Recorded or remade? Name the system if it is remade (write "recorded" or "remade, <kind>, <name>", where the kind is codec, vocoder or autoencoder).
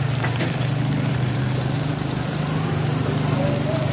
remade, vocoder, BigVGAN v2